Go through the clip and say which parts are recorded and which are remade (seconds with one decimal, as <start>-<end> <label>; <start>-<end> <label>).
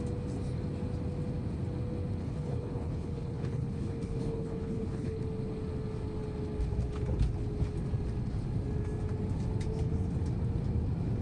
0.0-2.2 recorded; 2.2-5.2 remade; 5.2-11.2 recorded